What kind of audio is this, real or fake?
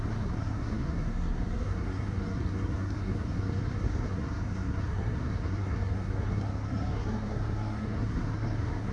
fake